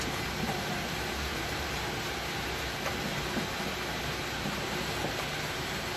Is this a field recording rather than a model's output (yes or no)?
yes